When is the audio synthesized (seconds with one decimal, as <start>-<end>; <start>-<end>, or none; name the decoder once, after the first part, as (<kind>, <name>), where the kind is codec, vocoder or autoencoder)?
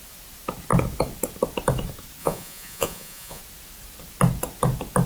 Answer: 2.2-3.4 (vocoder, Vocos)